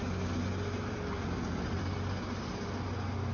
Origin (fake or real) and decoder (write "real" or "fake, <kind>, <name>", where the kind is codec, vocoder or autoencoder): real